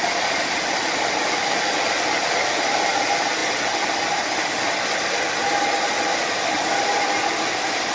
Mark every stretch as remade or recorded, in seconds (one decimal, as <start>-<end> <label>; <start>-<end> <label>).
0.0-7.9 recorded

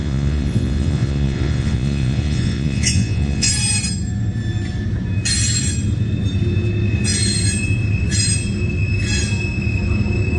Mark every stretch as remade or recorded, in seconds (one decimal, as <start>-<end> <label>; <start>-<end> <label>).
0.0-3.5 remade; 3.5-10.4 recorded